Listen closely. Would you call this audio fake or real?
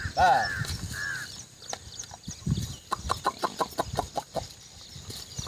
real